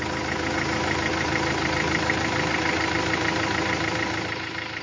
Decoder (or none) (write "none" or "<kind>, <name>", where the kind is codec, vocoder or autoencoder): none